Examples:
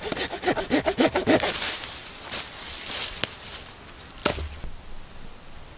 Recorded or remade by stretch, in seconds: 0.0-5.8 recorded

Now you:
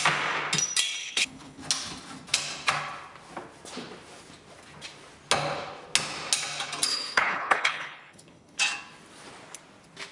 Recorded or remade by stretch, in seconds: 0.0-1.0 recorded; 1.0-1.6 remade; 1.6-6.9 recorded; 6.9-8.6 remade; 8.6-10.1 recorded

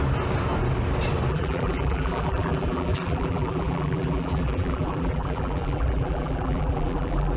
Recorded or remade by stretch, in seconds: 0.0-1.3 recorded; 1.3-7.4 remade

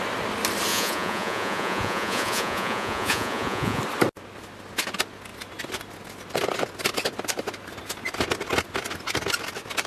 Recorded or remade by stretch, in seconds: 0.0-0.7 recorded; 0.7-3.8 remade; 3.8-9.9 recorded

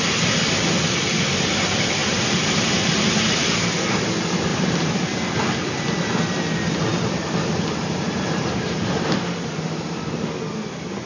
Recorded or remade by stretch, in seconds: 0.0-2.0 recorded; 2.0-2.9 remade; 2.9-4.5 recorded; 4.5-5.3 remade; 5.3-6.9 recorded; 6.9-10.0 remade; 10.0-11.1 recorded

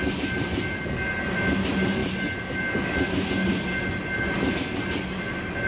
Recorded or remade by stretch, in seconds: 0.0-5.7 recorded

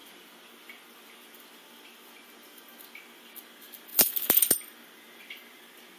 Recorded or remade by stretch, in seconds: 0.0-6.0 recorded

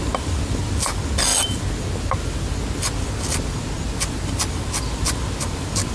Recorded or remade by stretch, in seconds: 0.0-5.9 recorded